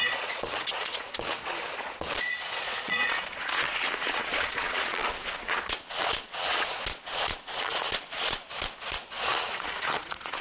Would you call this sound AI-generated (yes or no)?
yes